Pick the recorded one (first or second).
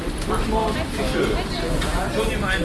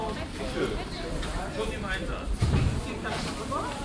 first